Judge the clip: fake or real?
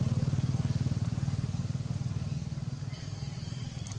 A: real